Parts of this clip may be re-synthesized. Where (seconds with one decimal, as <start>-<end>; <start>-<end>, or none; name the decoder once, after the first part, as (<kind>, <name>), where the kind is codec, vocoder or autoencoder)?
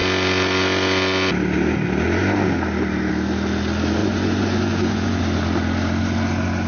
4.0-5.2 (vocoder, Vocos)